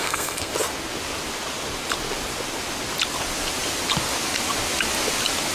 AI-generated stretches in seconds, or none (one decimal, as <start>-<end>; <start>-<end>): 0.0-0.5

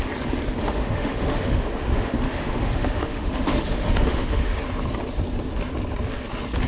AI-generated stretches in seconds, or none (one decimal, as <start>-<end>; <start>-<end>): 0.6-4.6

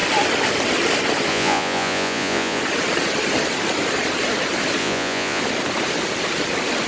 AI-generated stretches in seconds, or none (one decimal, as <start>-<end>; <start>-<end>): 1.3-2.6; 4.8-5.4

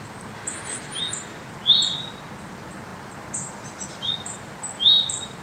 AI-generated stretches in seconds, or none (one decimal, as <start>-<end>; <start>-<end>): none